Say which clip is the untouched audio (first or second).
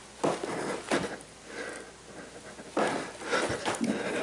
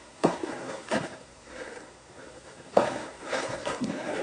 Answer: first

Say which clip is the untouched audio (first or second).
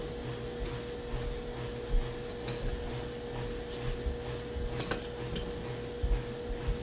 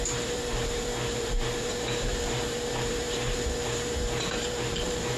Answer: first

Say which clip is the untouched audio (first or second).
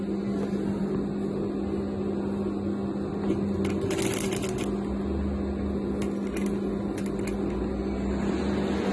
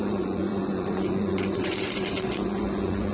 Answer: first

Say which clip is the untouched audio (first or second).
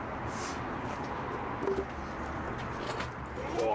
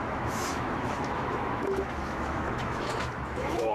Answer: first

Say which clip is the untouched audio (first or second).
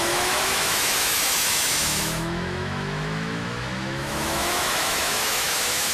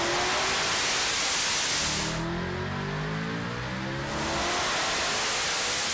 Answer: second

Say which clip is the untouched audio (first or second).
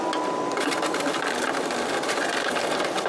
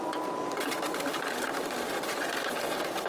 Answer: first